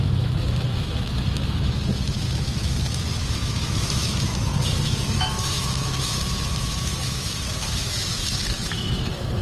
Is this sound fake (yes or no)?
yes